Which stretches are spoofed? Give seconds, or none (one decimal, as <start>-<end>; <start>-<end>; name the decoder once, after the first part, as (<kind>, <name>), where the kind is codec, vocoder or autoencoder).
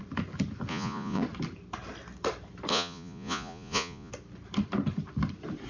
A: 0.7-1.2 (vocoder, Vocos); 2.7-4.1